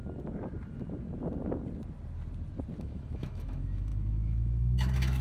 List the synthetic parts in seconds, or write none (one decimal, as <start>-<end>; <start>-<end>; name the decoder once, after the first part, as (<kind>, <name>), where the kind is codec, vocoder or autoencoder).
2.8-5.2 (autoencoder, DAC-VAE)